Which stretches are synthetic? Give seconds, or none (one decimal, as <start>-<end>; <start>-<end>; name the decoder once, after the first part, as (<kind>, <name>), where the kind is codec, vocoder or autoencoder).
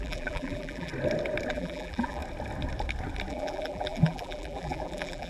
0.0-0.9 (vocoder, BigVGAN v2); 1.5-2.2; 3.3-5.3